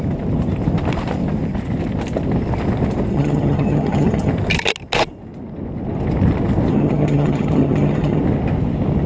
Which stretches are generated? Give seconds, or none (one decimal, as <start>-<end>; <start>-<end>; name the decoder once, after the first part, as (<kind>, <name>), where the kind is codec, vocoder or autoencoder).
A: 3.1-4.3 (vocoder, HiFi-GAN); 6.7-8.2